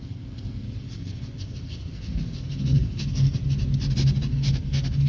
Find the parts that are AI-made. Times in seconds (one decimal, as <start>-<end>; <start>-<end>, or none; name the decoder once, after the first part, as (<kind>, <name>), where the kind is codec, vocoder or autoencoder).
0.0-3.4 (codec, SNAC); 4.3-5.1